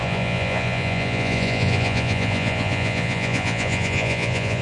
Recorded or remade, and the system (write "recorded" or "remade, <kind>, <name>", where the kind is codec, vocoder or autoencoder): remade, vocoder, Vocos